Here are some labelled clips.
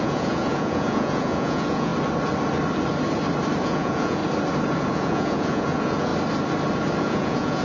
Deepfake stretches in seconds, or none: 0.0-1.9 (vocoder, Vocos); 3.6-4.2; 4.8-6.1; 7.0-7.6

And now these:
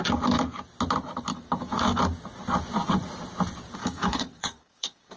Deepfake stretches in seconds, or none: 1.3-2.0 (codec, DAC); 3.8-5.2